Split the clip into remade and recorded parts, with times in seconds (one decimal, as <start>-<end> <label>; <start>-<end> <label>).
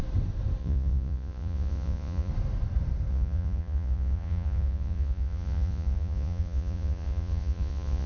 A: 0.0-0.6 recorded; 0.6-2.3 remade; 2.3-3.1 recorded; 3.1-8.1 remade